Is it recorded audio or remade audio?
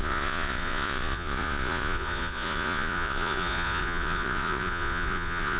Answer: remade